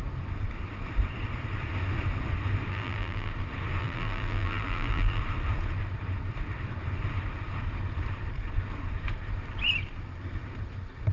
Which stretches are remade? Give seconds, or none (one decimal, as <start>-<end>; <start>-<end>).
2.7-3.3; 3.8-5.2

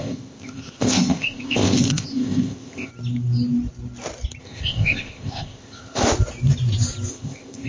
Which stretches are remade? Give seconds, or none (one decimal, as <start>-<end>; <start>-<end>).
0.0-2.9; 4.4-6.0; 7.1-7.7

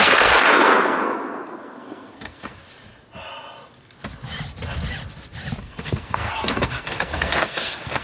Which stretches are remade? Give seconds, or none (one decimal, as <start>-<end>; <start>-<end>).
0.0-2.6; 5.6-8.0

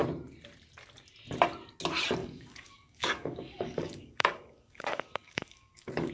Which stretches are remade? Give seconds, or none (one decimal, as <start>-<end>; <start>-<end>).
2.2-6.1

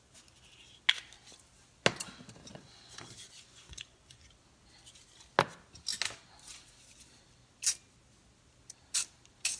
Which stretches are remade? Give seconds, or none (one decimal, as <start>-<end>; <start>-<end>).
2.4-4.3